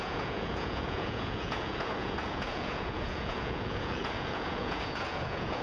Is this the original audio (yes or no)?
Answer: no